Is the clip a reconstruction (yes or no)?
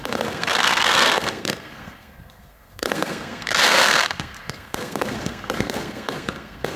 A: yes